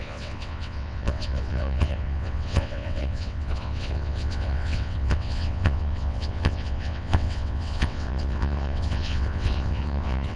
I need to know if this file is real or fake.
fake